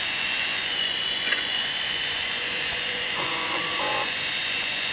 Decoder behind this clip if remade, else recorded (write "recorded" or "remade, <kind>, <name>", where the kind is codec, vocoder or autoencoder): remade, vocoder, Vocos